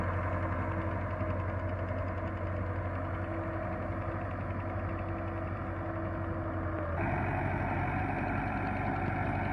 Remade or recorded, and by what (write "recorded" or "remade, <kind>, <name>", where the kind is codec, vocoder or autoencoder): recorded